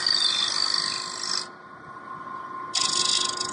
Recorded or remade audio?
recorded